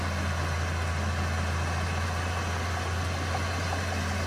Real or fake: real